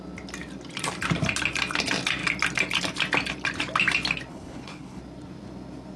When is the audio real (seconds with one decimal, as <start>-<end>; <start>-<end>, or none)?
0.0-4.3; 5.0-6.0